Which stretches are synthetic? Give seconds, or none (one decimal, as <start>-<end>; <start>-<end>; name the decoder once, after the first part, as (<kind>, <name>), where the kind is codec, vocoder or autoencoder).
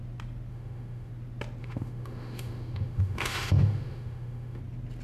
0.5-1.1 (autoencoder, DAC-VAE); 1.6-4.6